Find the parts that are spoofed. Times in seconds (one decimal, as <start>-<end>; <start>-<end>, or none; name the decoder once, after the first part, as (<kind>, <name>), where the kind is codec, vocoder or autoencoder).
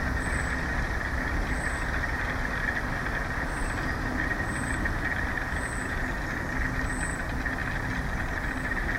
none